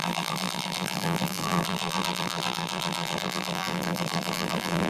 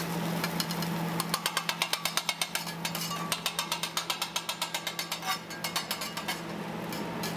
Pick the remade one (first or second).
first